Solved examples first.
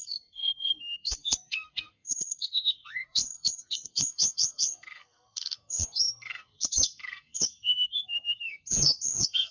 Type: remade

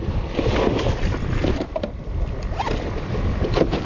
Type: remade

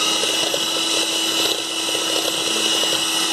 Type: recorded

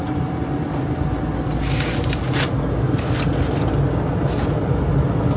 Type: recorded